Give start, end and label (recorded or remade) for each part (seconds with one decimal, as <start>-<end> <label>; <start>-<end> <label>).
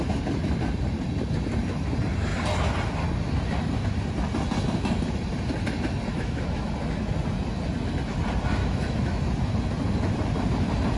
0.0-6.1 recorded; 6.1-6.7 remade; 6.7-8.6 recorded; 8.6-9.2 remade; 9.2-11.0 recorded